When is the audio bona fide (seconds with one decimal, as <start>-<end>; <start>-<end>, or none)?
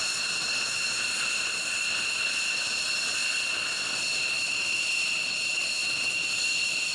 0.0-6.9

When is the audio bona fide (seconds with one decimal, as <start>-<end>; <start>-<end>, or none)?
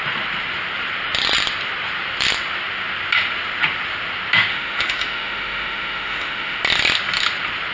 0.0-4.5; 6.6-7.7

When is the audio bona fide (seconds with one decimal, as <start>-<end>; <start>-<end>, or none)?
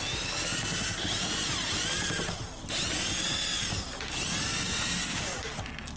0.0-5.0; 5.5-6.0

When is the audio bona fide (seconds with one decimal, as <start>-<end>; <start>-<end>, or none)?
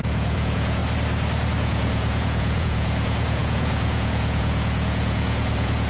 0.8-1.6